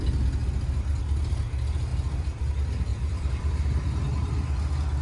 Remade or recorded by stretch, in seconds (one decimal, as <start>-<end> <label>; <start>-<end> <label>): 0.0-1.9 recorded; 1.9-2.5 remade; 2.5-2.9 recorded; 2.9-3.5 remade; 3.5-5.0 recorded